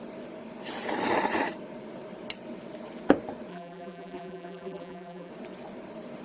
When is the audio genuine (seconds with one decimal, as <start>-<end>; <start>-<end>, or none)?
0.0-3.5; 5.3-6.2